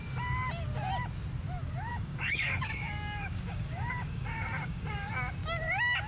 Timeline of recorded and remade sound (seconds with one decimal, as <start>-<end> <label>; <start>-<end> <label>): 0.0-1.9 recorded; 1.9-5.1 remade; 5.1-6.1 recorded